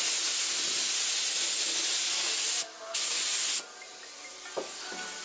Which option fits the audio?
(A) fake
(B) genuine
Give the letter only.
B